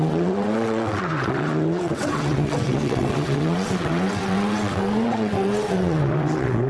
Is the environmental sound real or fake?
fake